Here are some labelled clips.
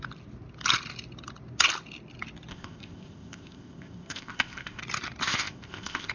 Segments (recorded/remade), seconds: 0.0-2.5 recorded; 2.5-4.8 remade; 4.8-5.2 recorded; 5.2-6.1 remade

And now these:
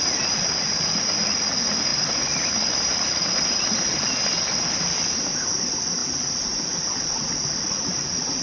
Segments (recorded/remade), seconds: 0.0-1.9 recorded; 1.9-3.1 remade; 3.1-8.4 recorded

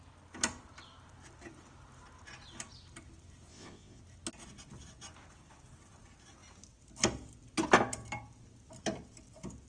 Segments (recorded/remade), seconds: 0.0-3.5 recorded; 3.5-4.0 remade; 4.0-9.7 recorded

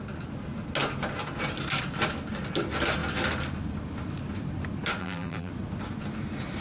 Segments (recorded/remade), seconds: 0.0-5.0 recorded; 5.0-5.5 remade; 5.5-6.6 recorded